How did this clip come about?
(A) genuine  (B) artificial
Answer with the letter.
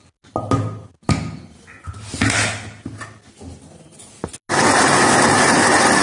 A